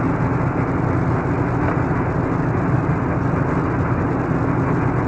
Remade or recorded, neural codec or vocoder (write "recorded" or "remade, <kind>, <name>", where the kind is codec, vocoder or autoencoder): recorded